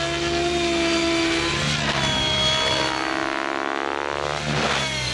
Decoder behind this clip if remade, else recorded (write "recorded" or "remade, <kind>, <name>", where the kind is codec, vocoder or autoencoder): recorded